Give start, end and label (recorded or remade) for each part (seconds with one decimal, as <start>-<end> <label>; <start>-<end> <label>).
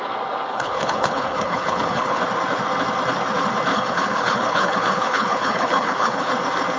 0.0-0.5 recorded; 0.5-2.2 remade; 2.2-3.7 recorded; 3.7-6.3 remade; 6.3-6.8 recorded